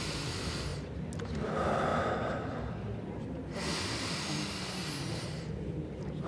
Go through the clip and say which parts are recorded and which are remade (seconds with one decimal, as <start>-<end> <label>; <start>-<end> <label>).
0.0-1.9 recorded; 1.9-2.7 remade; 2.7-6.3 recorded